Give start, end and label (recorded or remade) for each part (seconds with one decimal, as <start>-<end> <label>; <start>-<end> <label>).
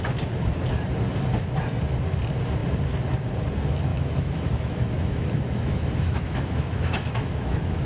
0.0-3.9 recorded; 3.9-7.8 remade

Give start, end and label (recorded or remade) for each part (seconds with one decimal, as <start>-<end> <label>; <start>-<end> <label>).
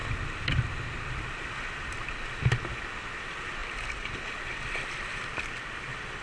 0.0-2.2 remade; 2.2-3.6 recorded; 3.6-5.2 remade; 5.2-6.2 recorded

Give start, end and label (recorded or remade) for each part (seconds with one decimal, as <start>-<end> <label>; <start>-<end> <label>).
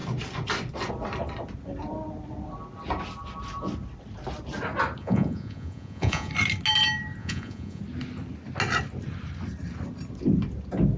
0.0-5.0 recorded; 5.0-6.3 remade; 6.3-7.2 recorded; 7.2-7.8 remade; 7.8-11.0 recorded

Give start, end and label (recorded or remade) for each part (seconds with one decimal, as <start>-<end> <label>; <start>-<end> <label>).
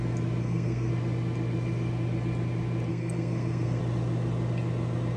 0.0-0.4 recorded; 0.4-0.9 remade; 0.9-2.9 recorded; 2.9-3.8 remade; 3.8-5.2 recorded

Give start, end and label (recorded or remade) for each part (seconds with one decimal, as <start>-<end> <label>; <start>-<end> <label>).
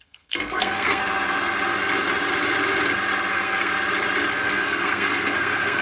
0.0-1.0 remade; 1.0-3.3 recorded; 3.3-3.7 remade; 3.7-4.3 recorded; 4.3-5.8 remade